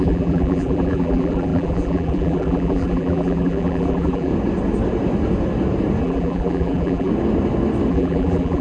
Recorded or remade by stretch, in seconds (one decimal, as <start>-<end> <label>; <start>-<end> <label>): 0.0-4.3 remade; 4.3-6.0 recorded; 6.0-7.1 remade; 7.1-7.9 recorded; 7.9-8.6 remade